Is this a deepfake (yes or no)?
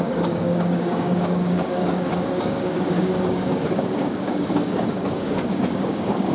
yes